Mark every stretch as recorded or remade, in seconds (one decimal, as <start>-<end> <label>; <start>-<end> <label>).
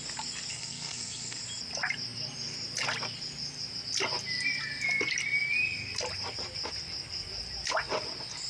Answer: 0.0-0.5 recorded; 0.5-1.4 remade; 1.4-8.5 recorded